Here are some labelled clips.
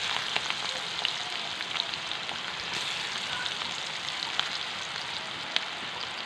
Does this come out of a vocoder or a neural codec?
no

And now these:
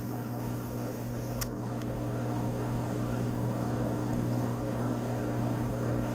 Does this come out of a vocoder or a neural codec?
yes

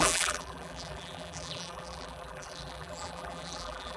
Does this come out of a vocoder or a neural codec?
yes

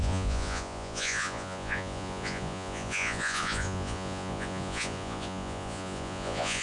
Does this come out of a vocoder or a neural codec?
yes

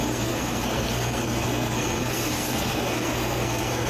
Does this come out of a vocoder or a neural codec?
yes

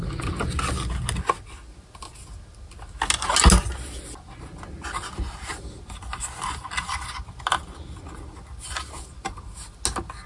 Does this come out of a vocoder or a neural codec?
no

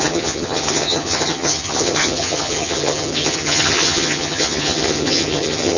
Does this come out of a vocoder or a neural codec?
yes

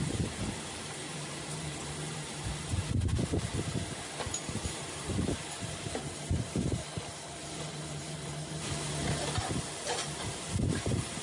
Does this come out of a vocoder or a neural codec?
yes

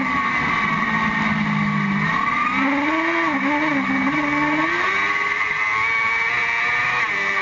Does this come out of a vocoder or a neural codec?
no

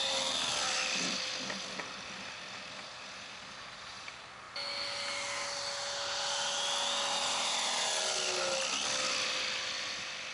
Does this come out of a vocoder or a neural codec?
no